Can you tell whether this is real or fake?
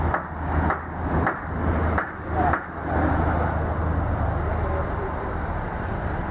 real